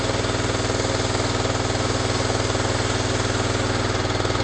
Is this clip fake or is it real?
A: real